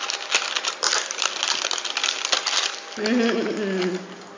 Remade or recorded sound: recorded